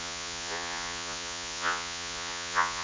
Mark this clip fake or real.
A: fake